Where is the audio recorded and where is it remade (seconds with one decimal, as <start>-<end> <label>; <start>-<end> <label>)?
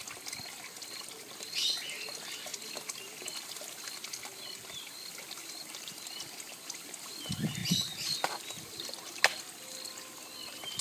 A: 0.0-10.8 recorded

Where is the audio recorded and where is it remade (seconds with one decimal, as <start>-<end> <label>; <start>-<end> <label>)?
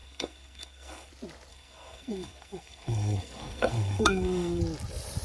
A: 0.0-1.1 remade; 1.1-1.5 recorded; 1.5-4.6 remade; 4.6-5.2 recorded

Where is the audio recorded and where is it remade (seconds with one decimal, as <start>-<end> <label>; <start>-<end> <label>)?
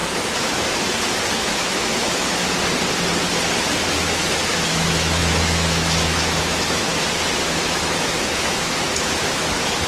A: 0.0-1.3 recorded; 1.3-2.4 remade; 2.4-3.9 recorded; 3.9-6.9 remade; 6.9-7.6 recorded; 7.6-9.9 remade